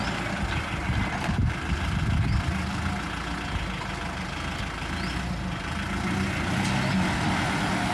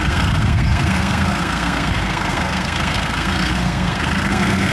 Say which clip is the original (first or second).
first